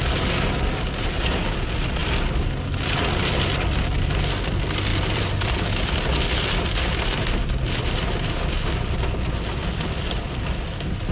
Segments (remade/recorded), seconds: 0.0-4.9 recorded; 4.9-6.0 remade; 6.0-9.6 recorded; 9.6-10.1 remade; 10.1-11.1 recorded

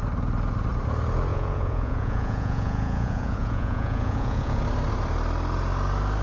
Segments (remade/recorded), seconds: 0.0-1.3 recorded; 1.3-4.6 remade; 4.6-6.2 recorded

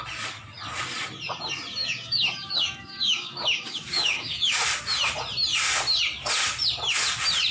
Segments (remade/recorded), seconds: 0.0-1.8 recorded; 1.8-4.6 remade; 4.6-7.5 recorded

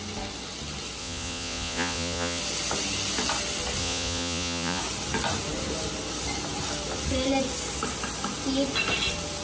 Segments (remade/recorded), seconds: 0.0-1.0 recorded; 1.0-2.4 remade; 2.4-3.8 recorded; 3.8-4.8 remade; 4.8-9.4 recorded

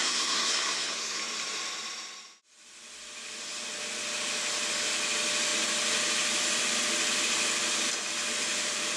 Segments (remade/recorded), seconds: 0.0-1.2 remade; 1.2-9.0 recorded

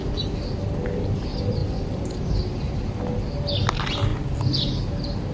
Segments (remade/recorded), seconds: 0.0-5.3 recorded

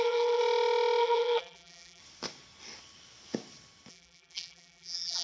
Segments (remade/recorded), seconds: 0.0-0.4 remade; 0.4-1.0 recorded; 1.0-2.0 remade; 2.0-3.9 recorded; 3.9-5.2 remade

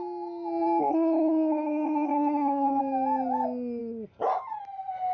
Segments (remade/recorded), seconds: 0.0-0.8 recorded; 0.8-2.8 remade; 2.8-5.1 recorded